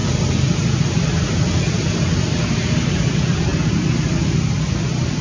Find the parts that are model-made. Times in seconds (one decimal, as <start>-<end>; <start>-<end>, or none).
none